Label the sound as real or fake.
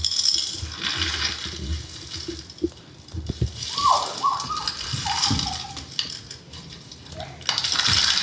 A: real